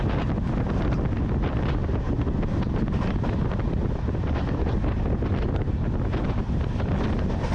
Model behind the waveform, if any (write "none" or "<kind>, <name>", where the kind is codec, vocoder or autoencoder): none